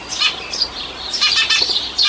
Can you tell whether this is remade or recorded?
recorded